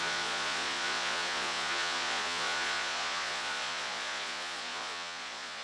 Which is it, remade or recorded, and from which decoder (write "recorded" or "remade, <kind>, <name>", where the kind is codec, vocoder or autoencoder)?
remade, vocoder, Vocos